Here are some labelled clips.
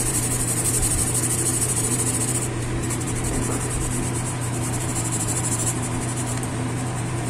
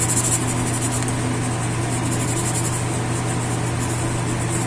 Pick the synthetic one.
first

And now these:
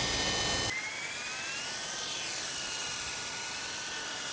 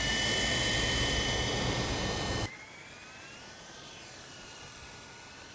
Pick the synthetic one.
second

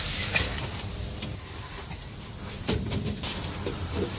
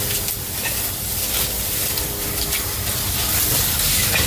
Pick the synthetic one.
first